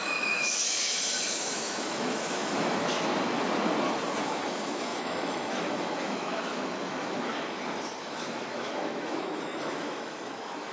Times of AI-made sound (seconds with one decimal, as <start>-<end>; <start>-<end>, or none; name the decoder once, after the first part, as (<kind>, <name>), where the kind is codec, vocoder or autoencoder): 0.0-3.1 (autoencoder, DAC-VAE); 4.2-7.3; 8.0-10.7